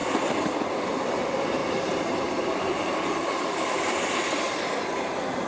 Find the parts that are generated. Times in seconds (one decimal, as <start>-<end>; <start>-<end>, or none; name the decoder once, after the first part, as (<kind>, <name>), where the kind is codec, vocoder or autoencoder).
1.6-3.3 (vocoder, BigVGAN v2)